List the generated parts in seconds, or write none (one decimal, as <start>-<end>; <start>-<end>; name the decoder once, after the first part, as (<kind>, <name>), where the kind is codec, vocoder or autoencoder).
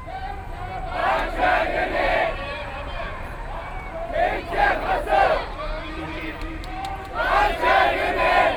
1.0-4.7 (vocoder, BigVGAN v2); 6.2-8.6